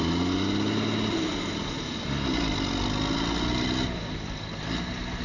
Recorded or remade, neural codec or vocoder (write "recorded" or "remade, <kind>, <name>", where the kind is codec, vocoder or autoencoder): recorded